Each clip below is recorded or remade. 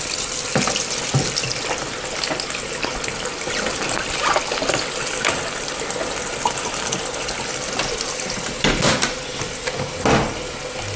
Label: recorded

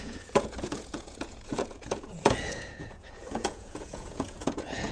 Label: remade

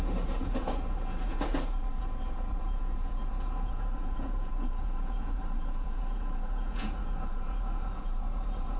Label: remade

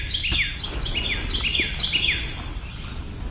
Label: recorded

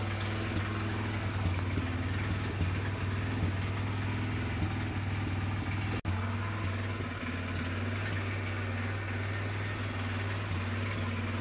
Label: recorded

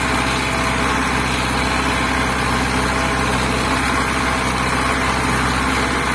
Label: recorded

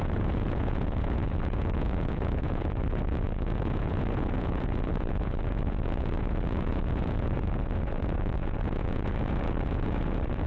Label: remade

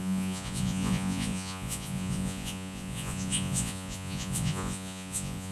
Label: remade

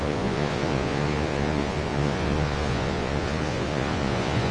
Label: remade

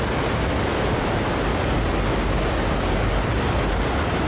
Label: recorded